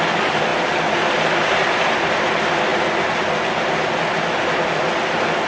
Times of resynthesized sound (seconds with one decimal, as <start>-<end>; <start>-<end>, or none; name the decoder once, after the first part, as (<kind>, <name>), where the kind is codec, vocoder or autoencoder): none